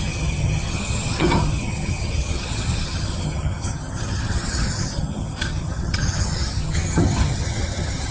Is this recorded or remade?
remade